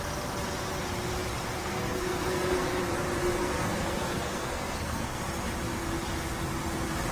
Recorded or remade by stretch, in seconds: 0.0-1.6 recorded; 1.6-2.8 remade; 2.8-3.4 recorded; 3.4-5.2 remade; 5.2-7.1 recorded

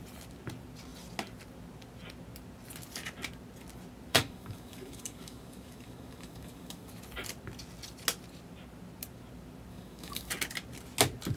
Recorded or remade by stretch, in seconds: 0.0-4.1 recorded; 4.1-6.9 remade; 6.9-9.7 recorded; 9.7-10.3 remade; 10.3-11.4 recorded

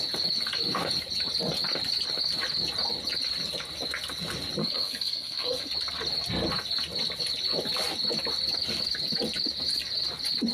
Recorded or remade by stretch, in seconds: 0.0-4.6 recorded; 4.6-5.7 remade; 5.7-10.5 recorded